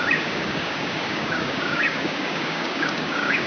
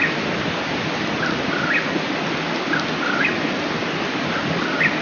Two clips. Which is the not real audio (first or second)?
first